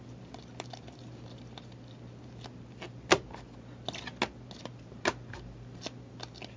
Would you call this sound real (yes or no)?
yes